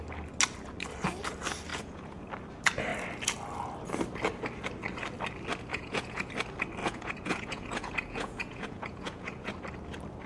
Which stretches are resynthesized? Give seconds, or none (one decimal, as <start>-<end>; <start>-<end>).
1.7-2.3; 5.7-6.3; 6.8-9.5